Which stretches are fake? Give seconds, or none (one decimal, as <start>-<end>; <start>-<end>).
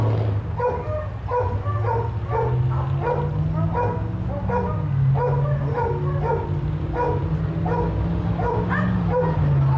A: none